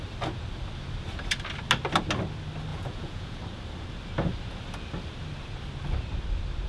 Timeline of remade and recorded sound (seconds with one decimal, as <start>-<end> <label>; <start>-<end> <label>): 0.0-2.7 recorded; 2.7-3.4 remade; 3.4-6.7 recorded

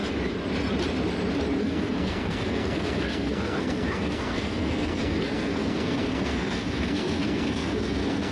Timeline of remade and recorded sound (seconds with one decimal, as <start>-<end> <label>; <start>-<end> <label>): 0.0-1.6 recorded; 1.6-8.3 remade

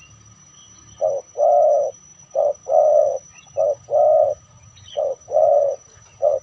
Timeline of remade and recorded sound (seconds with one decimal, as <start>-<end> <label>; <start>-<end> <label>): 0.0-2.1 recorded; 2.1-3.5 remade; 3.5-4.2 recorded; 4.2-6.4 remade